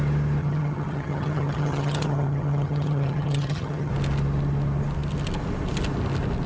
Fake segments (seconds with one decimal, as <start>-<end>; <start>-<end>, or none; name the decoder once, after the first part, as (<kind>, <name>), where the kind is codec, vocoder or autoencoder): 0.4-3.9 (vocoder, HiFi-GAN)